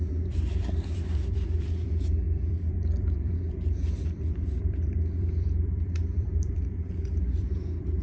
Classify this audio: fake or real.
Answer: fake